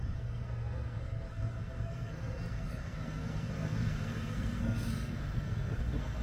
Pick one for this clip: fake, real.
fake